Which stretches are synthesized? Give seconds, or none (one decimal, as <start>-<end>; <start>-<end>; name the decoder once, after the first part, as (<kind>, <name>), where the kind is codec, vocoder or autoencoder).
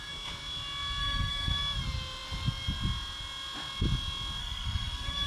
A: 1.0-1.6 (codec, SNAC); 4.4-5.3